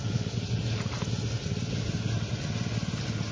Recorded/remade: recorded